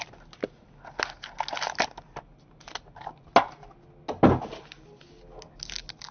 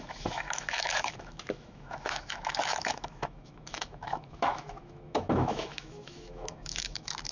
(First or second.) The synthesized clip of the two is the second